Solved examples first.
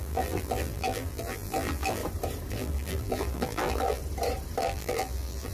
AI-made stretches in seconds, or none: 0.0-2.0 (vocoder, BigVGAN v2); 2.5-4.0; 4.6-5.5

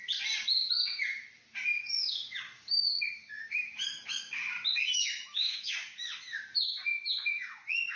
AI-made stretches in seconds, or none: 1.8-6.4 (autoencoder, DAC-VAE); 7.0-8.0

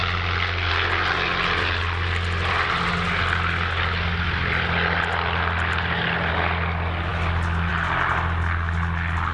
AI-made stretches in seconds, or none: none

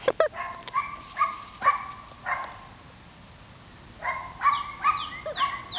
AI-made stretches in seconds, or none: 2.4-3.1 (vocoder, BigVGAN v2)

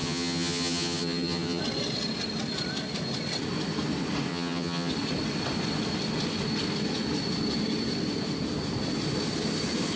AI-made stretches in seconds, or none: 0.0-1.6 (vocoder, HiFi-GAN); 4.3-4.9